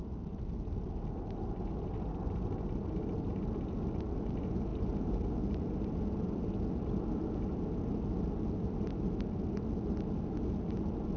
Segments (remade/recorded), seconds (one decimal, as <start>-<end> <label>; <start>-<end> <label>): 0.0-11.2 recorded